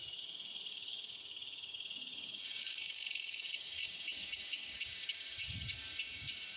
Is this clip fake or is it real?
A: fake